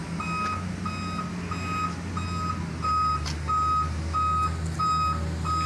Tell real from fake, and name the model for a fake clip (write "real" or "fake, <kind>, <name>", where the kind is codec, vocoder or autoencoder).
real